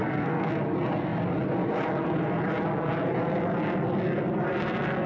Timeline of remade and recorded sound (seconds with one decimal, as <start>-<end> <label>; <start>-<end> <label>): 0.0-0.5 remade; 0.5-5.1 recorded